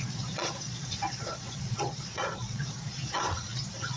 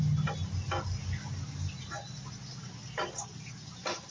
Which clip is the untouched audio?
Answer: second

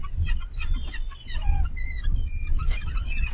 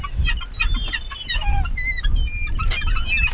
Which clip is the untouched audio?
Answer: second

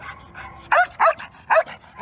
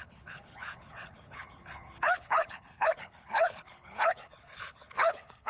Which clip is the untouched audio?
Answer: first